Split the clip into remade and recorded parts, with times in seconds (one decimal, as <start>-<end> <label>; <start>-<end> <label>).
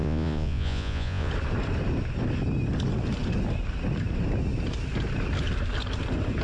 0.0-1.3 remade; 1.3-6.4 recorded